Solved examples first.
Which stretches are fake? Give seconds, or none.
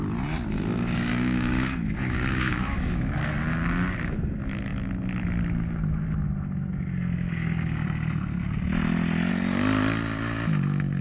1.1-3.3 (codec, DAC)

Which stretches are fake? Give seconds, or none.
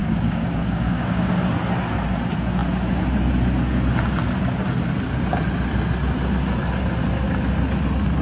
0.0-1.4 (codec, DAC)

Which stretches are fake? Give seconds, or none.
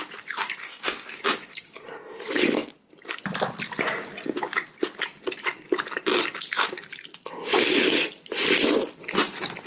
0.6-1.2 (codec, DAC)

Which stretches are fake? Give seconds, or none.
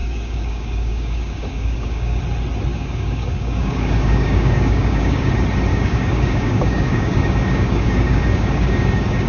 0.0-2.2 (codec, DAC); 2.7-5.3; 5.7-9.3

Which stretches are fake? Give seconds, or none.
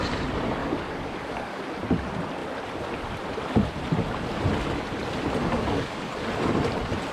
0.6-1.6 (codec, DAC); 5.4-6.1